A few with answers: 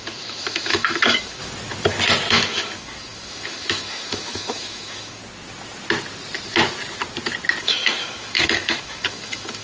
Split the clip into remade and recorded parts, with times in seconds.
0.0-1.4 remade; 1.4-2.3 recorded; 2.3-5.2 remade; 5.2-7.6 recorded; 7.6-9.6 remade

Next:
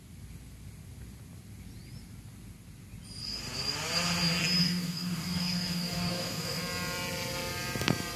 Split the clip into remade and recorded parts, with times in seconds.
0.0-4.6 recorded; 4.6-6.6 remade; 6.6-8.2 recorded

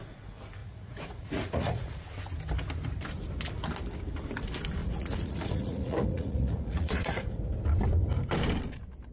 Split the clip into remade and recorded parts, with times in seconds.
0.0-0.6 recorded; 0.6-2.0 remade; 2.0-4.8 recorded; 4.8-7.4 remade; 7.4-9.1 recorded

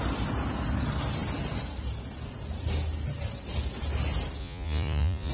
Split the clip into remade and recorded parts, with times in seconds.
0.0-4.4 recorded; 4.4-5.3 remade

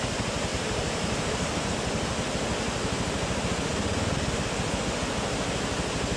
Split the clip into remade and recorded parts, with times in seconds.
0.0-0.5 recorded; 0.5-1.7 remade; 1.7-6.2 recorded

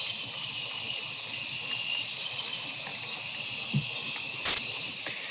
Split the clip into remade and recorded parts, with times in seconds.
0.0-5.3 recorded